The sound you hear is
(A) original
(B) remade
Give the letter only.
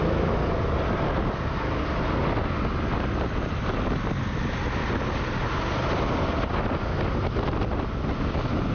A